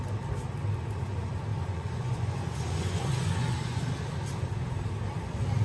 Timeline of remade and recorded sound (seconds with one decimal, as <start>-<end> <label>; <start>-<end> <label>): 0.0-1.5 recorded; 1.5-3.8 remade; 3.8-5.6 recorded